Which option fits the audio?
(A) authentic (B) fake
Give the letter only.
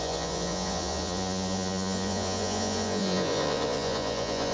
B